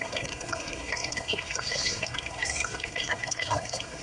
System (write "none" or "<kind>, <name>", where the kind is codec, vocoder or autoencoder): codec, SNAC